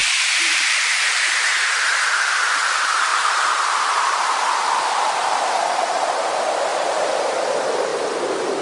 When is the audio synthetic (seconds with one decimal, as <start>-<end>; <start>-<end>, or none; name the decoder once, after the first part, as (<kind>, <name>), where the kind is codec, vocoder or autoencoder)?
0.0-1.9 (vocoder, BigVGAN v2); 3.1-6.0; 6.7-7.4